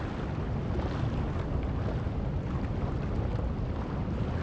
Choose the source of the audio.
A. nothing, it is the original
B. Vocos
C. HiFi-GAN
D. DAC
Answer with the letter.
A